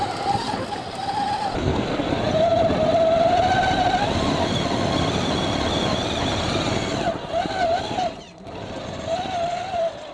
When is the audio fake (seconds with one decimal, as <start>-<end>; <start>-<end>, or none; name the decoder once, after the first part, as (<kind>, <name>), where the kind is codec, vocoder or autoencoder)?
1.6-2.1 (codec, SNAC)